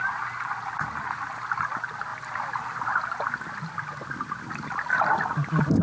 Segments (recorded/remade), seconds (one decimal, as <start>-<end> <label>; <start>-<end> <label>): 0.0-5.8 recorded